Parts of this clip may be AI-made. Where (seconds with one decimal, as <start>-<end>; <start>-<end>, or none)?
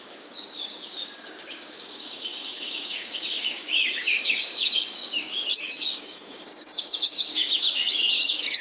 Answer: 0.0-8.6